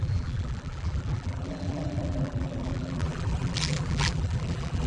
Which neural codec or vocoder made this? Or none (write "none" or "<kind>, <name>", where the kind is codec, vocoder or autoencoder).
vocoder, BigVGAN v2